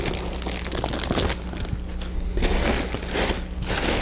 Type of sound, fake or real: real